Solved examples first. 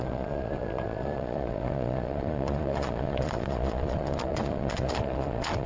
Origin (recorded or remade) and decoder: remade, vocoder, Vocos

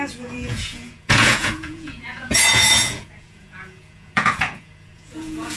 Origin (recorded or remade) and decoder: remade, vocoder, Vocos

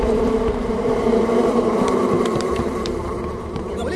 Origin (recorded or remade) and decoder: remade, vocoder, BigVGAN v2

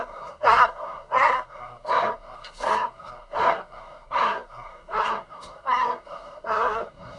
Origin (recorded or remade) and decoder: remade, codec, SNAC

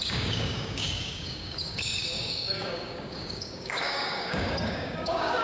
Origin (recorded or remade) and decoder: remade, codec, DAC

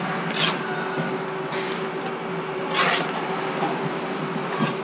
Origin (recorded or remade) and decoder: recorded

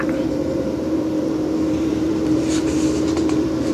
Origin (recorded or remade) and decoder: remade, vocoder, BigVGAN v2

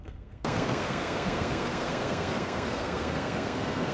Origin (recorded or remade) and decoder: remade, codec, SNAC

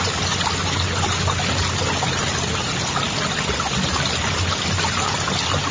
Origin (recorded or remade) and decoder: recorded